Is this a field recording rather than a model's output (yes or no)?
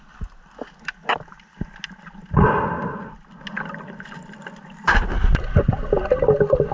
yes